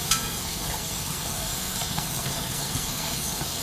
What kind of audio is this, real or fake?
fake